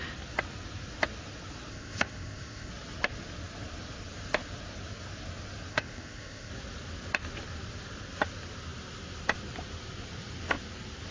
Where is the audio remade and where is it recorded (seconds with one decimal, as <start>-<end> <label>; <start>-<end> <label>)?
0.0-1.7 recorded; 1.7-2.7 remade; 2.7-5.7 recorded; 5.7-6.5 remade; 6.5-11.1 recorded